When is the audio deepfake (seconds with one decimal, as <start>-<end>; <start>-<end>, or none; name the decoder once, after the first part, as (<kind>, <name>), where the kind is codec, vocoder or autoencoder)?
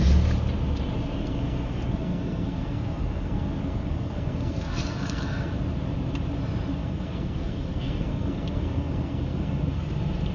1.2-5.5 (codec, SNAC); 6.8-9.9